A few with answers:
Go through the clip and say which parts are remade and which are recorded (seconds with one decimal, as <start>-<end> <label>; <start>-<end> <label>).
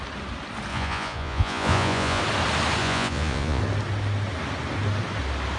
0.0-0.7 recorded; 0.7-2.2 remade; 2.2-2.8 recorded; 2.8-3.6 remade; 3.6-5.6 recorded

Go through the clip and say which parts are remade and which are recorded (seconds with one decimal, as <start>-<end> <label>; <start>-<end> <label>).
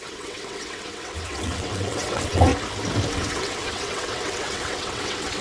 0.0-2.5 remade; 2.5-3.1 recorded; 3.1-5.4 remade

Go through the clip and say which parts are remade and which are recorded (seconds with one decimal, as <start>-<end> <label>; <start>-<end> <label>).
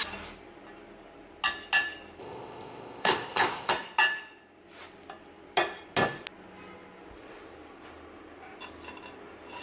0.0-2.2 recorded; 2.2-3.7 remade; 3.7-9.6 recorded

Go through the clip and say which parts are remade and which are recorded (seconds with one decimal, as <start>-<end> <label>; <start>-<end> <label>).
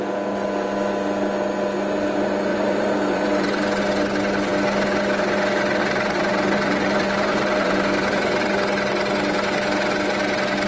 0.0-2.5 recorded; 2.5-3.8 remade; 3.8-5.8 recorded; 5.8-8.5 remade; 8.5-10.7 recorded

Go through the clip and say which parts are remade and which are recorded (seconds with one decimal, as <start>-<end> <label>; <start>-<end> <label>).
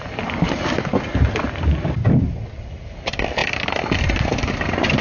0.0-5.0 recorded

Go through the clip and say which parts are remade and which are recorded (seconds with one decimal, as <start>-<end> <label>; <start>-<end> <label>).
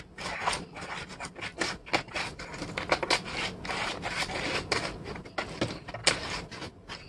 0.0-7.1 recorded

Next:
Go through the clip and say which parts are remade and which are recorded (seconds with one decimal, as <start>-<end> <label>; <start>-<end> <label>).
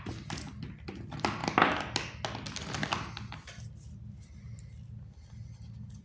0.0-6.0 recorded